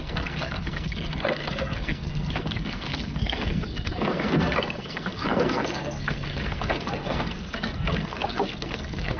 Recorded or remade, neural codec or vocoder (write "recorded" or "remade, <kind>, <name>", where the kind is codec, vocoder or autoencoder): remade, codec, SNAC